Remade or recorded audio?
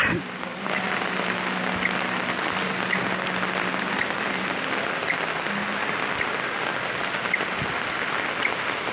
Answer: recorded